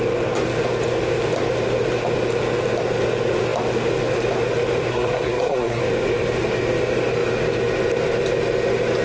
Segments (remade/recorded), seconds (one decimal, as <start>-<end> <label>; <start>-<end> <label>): 0.0-4.9 recorded; 4.9-5.8 remade; 5.8-9.0 recorded